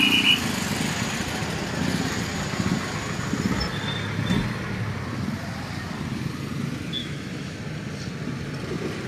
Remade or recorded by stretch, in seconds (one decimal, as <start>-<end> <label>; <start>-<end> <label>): 0.0-7.0 recorded; 7.0-7.6 remade; 7.6-9.1 recorded